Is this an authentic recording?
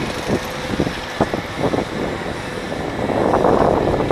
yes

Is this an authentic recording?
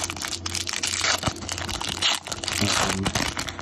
yes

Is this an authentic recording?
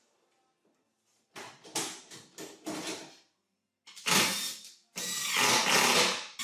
yes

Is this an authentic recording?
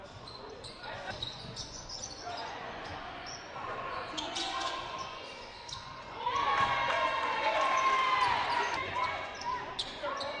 no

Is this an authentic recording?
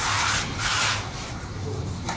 yes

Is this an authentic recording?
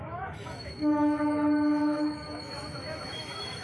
no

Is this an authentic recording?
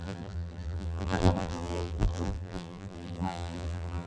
no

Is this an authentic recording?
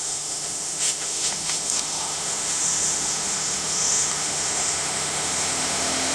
no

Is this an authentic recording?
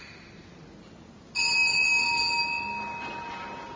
yes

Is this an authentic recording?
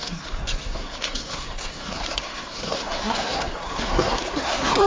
no